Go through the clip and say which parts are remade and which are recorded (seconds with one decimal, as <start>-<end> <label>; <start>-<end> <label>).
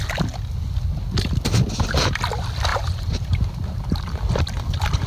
0.0-2.7 recorded; 2.7-4.0 remade; 4.0-5.1 recorded